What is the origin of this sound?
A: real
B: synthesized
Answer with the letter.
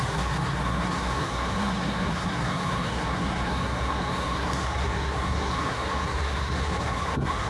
B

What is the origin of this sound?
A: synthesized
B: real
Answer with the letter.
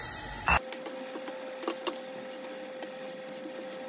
B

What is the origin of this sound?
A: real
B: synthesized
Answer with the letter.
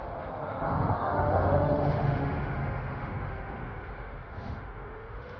B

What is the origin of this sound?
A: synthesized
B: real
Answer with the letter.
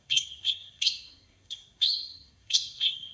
A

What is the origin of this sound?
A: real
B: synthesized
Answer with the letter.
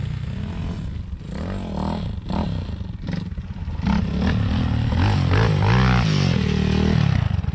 A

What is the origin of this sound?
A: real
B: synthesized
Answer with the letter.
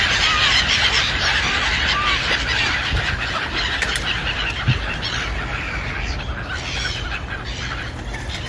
B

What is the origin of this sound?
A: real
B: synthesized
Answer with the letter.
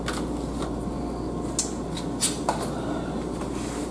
A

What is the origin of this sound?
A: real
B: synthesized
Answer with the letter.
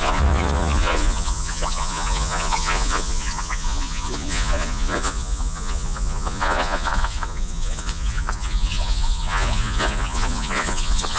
B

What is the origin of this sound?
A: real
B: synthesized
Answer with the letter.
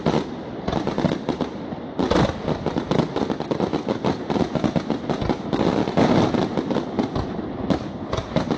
A